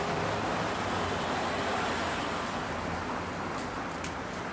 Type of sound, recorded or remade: recorded